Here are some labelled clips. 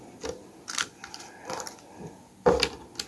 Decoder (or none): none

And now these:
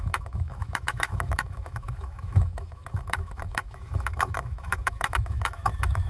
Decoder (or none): autoencoder, DAC-VAE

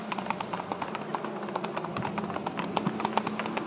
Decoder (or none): none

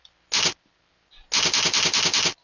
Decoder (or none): none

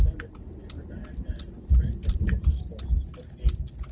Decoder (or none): none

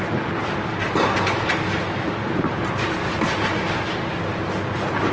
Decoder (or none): none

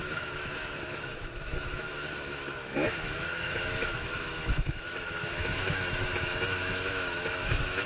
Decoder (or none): autoencoder, DAC-VAE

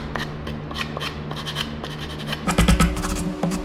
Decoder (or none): none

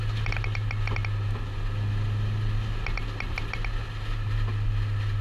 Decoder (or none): none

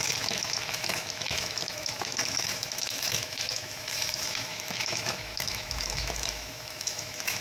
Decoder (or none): autoencoder, DAC-VAE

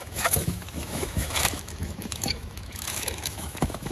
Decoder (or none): autoencoder, DAC-VAE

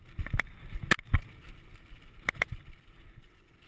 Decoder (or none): none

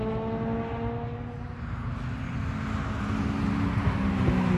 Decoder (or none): none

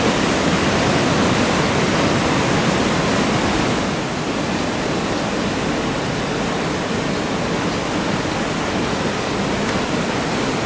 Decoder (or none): none